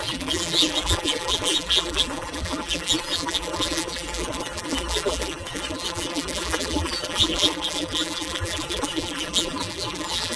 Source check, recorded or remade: remade